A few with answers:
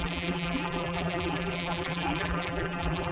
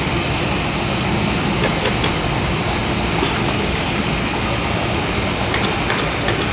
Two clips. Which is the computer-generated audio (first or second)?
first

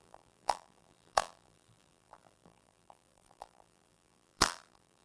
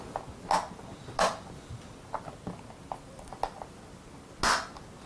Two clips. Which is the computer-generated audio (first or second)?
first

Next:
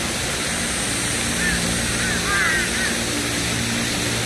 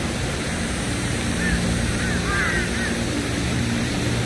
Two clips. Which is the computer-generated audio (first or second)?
second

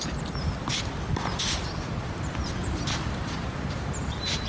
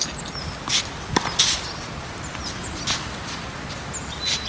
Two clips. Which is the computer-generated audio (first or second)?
first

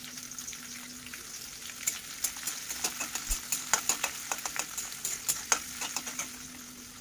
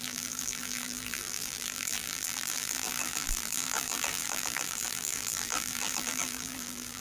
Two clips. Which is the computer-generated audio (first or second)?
second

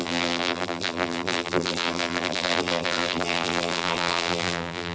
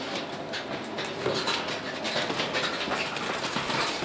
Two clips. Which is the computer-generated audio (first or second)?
first